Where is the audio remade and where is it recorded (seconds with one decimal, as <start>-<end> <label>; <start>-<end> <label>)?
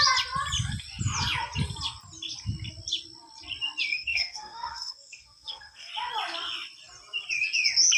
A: 0.0-3.9 recorded; 3.9-5.9 remade; 5.9-8.0 recorded